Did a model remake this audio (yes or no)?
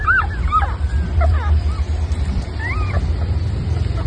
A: yes